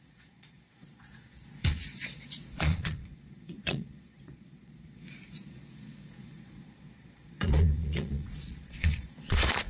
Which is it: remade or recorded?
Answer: remade